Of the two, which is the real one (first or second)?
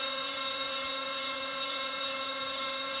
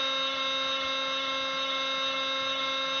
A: second